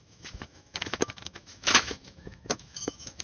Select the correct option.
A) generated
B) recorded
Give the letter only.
A